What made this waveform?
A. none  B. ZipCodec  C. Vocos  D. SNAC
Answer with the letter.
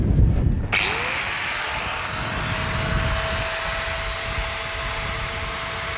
A